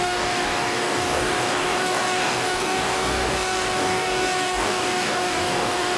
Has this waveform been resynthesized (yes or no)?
yes